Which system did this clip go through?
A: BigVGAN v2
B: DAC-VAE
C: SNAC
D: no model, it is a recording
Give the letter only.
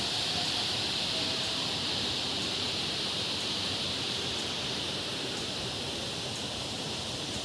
A